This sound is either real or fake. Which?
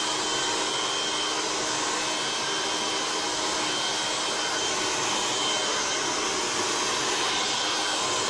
real